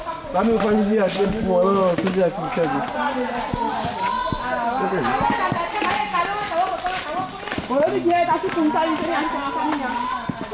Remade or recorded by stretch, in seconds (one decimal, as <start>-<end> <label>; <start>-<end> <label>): 0.0-10.5 recorded